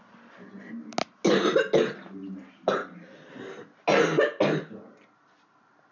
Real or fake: real